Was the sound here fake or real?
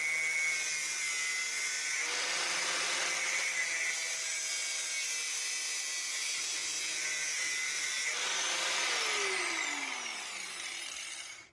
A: real